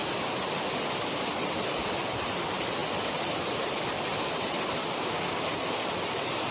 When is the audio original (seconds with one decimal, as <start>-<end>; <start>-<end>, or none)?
0.0-6.5